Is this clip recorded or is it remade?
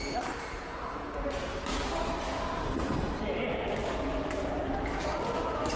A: recorded